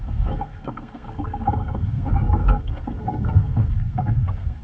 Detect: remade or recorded remade